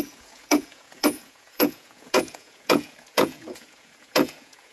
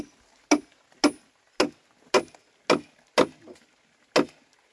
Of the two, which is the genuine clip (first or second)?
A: second